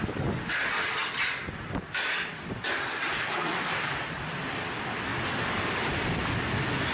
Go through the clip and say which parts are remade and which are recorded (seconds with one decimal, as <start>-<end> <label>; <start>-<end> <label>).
0.0-1.0 remade; 1.0-1.6 recorded; 1.6-5.1 remade; 5.1-5.6 recorded; 5.6-6.9 remade